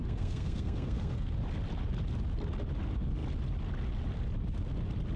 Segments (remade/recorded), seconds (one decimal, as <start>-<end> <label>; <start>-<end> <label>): 0.0-1.3 remade; 1.3-5.2 recorded